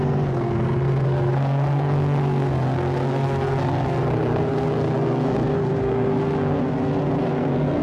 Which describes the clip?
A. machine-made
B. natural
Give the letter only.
A